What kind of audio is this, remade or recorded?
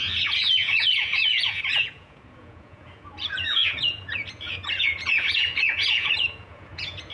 remade